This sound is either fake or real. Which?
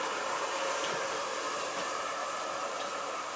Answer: fake